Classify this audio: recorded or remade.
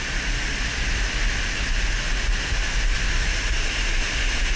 recorded